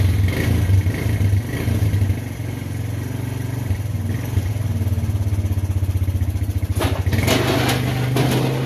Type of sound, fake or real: real